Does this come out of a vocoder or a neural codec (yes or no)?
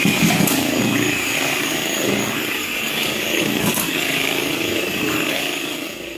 yes